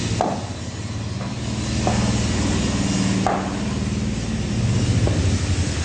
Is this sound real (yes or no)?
yes